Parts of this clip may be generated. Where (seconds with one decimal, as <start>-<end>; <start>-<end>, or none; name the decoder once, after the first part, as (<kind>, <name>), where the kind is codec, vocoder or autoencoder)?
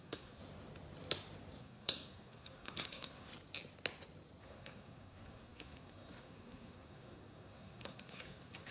0.0-0.4 (codec, SNAC); 1.6-3.3; 4.4-8.7